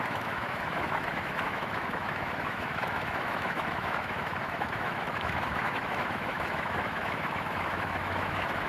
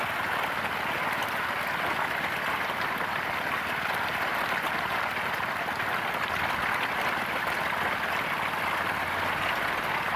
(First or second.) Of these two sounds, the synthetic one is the first